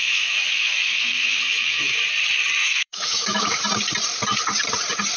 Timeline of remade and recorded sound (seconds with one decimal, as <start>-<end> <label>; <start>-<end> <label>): 0.0-2.0 remade; 2.0-2.6 recorded; 2.6-3.6 remade; 3.6-5.2 recorded